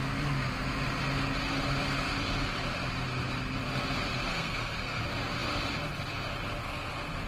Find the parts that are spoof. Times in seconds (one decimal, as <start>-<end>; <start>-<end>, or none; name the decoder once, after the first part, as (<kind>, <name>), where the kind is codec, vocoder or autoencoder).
4.3-5.0 (codec, SNAC)